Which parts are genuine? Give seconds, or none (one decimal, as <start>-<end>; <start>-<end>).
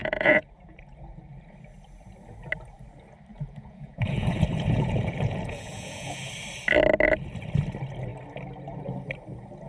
1.2-3.3; 6.2-9.7